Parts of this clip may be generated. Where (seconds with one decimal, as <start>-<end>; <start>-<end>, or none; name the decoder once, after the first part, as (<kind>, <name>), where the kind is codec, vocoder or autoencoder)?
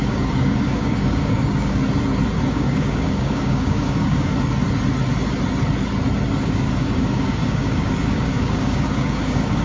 0.0-1.8 (codec, DAC); 2.5-4.3; 6.4-9.6